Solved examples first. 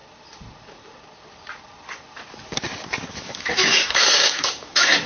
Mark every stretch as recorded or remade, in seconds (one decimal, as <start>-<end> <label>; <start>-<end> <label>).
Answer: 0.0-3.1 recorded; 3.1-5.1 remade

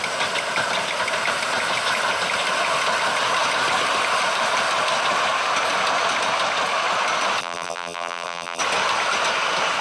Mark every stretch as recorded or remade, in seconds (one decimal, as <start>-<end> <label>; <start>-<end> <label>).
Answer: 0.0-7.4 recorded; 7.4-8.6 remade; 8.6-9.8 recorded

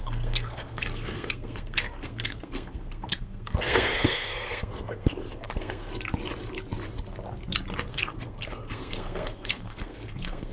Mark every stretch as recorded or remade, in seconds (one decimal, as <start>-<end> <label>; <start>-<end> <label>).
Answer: 0.0-5.9 remade; 5.9-7.9 recorded; 7.9-10.5 remade

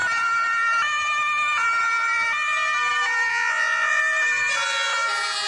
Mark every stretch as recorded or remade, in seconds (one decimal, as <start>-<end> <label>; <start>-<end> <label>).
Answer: 0.0-3.3 recorded; 3.3-4.0 remade; 4.0-5.5 recorded

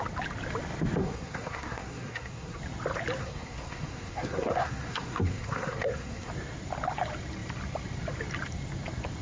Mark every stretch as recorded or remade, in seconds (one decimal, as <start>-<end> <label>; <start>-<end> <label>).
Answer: 0.0-1.0 recorded; 1.0-2.6 remade; 2.6-3.2 recorded; 3.2-6.3 remade; 6.3-9.2 recorded